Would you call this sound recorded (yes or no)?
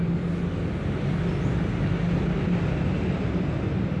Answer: yes